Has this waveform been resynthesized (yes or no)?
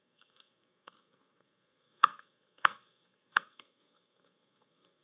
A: yes